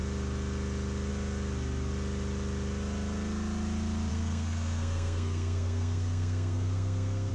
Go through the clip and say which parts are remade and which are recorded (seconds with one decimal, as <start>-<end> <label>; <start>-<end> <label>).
0.0-4.1 recorded; 4.1-7.3 remade